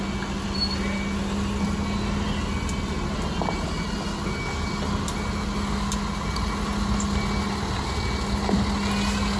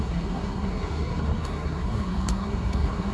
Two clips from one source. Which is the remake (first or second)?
second